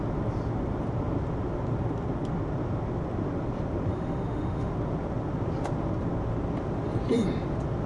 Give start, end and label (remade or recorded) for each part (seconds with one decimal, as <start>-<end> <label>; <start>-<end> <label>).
0.0-3.9 recorded; 3.9-4.7 remade; 4.7-7.9 recorded